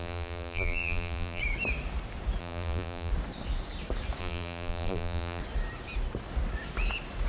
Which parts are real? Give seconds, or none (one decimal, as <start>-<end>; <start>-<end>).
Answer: 1.4-2.4; 3.1-4.2; 5.4-7.3